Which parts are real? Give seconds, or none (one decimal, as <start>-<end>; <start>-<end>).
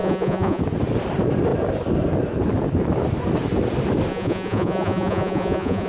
0.6-4.1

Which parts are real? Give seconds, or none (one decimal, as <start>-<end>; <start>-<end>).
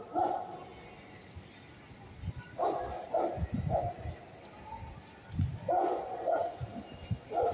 0.0-5.5; 6.7-7.5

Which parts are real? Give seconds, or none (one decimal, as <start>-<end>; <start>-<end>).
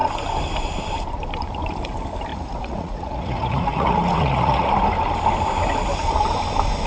0.0-2.3; 4.7-6.9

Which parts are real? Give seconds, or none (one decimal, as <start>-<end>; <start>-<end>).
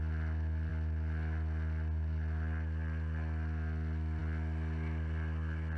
0.0-5.8